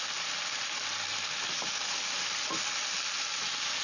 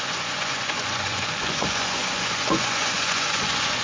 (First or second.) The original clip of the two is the first